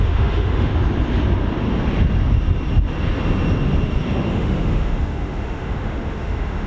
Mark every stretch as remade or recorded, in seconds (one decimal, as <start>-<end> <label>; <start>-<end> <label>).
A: 0.0-0.7 remade; 0.7-4.3 recorded; 4.3-6.7 remade